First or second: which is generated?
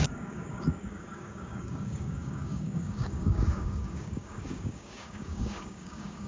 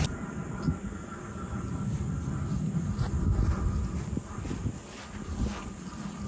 first